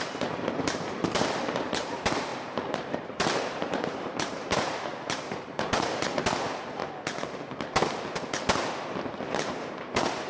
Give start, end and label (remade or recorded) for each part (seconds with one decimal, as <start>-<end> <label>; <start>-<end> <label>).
0.0-6.8 remade; 6.8-8.7 recorded; 8.7-10.3 remade